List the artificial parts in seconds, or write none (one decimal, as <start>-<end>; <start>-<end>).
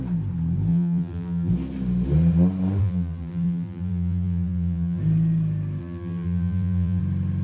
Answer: 0.7-1.5; 2.8-5.0; 5.8-7.0